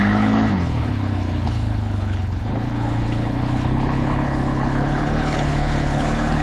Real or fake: fake